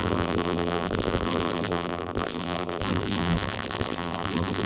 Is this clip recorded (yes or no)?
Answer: no